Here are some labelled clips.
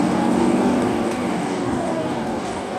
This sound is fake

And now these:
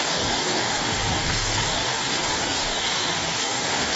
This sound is fake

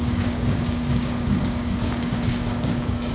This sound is fake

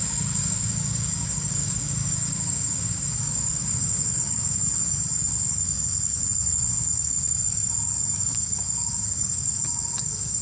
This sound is fake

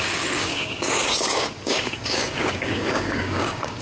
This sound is fake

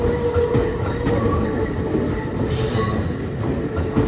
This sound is real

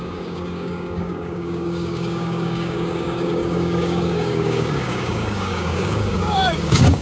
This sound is fake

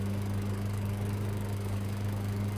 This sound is fake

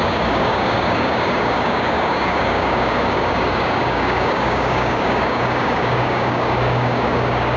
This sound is fake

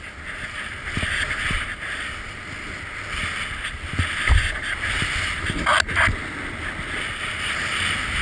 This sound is real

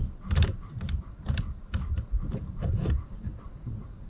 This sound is real